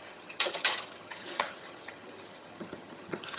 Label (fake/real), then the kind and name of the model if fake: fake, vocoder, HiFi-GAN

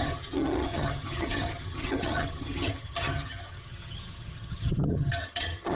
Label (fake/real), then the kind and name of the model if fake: fake, vocoder, HiFi-GAN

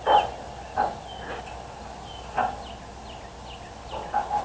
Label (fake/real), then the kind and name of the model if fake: real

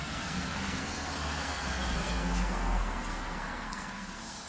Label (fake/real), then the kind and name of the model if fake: fake, codec, SNAC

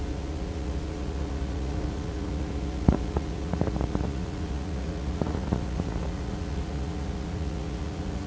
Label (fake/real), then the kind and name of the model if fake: fake, vocoder, Vocos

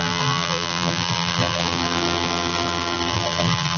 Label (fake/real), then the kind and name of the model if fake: fake, vocoder, BigVGAN v2